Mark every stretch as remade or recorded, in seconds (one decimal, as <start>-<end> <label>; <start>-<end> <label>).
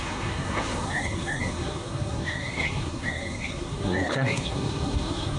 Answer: 0.0-5.4 remade